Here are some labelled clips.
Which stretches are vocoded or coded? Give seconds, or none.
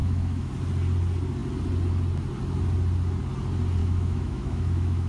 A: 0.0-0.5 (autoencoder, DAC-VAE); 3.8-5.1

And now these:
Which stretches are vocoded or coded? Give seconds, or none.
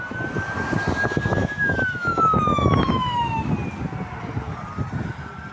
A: 1.4-3.5 (autoencoder, DAC-VAE)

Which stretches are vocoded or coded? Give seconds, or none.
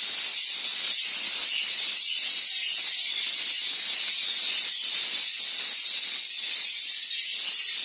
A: none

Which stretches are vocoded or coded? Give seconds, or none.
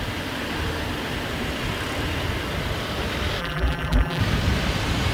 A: 3.4-4.2 (vocoder, BigVGAN v2)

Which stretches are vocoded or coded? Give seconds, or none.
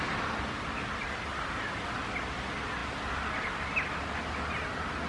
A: none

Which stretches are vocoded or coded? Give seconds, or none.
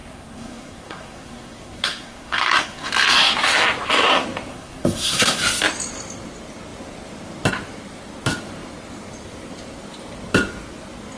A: 0.0-2.9 (codec, SNAC); 4.5-5.4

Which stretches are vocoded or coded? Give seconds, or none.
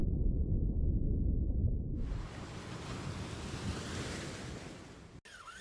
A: 0.0-1.2 (vocoder, Vocos)